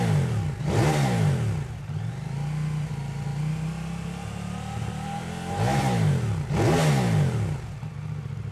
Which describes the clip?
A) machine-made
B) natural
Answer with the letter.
B